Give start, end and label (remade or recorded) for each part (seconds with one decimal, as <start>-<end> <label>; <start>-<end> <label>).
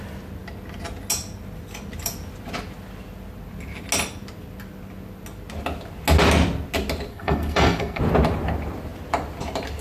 0.0-7.1 recorded; 7.1-8.0 remade; 8.0-9.8 recorded